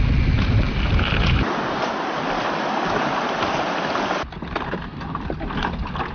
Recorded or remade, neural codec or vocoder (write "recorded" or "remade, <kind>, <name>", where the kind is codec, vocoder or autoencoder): recorded